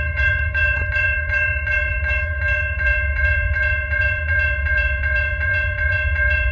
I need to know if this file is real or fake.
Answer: fake